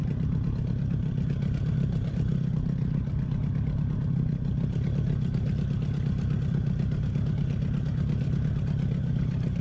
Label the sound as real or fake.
real